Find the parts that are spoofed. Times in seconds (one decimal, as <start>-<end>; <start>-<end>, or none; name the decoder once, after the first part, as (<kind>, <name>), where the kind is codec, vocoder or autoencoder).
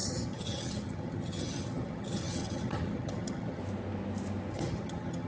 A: 0.0-3.6 (vocoder, HiFi-GAN); 4.5-5.3